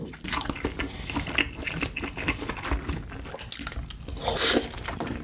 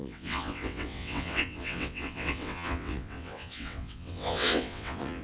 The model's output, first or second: second